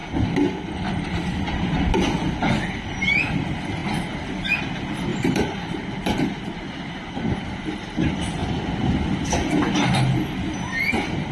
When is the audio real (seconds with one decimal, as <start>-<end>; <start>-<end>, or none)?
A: 0.0-5.1; 6.5-11.3